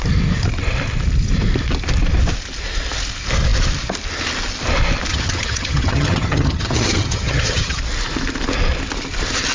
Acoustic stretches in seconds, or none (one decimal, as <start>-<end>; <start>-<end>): 0.0-5.1; 7.8-9.5